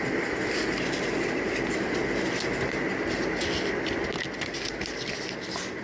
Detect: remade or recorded recorded